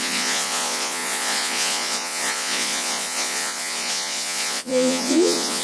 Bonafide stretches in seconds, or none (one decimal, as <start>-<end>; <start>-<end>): none